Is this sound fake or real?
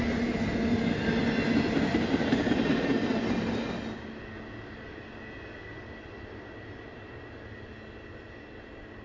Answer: real